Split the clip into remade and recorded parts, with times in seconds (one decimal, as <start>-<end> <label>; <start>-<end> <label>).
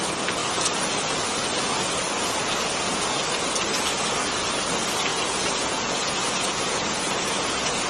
0.0-5.1 recorded; 5.1-7.9 remade